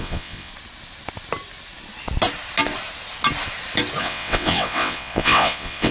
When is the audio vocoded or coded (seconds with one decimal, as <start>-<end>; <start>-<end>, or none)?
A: 0.0-0.5; 4.0-5.9